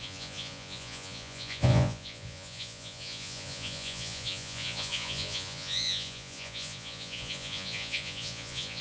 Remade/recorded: remade